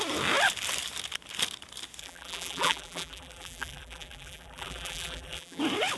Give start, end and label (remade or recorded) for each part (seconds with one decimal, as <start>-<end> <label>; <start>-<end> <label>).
0.0-2.0 recorded; 2.0-5.6 remade; 5.6-6.0 recorded